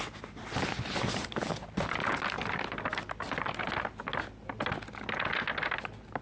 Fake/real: real